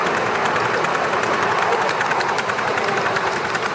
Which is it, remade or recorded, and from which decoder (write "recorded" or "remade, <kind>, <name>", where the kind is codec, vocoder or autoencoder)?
recorded